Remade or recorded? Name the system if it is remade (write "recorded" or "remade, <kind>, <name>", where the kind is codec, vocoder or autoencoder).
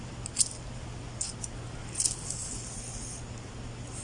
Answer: recorded